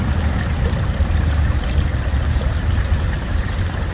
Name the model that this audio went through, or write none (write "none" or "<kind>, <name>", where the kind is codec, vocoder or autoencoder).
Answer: vocoder, BigVGAN v2